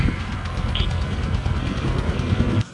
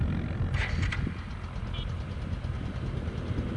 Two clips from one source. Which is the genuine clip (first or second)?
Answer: second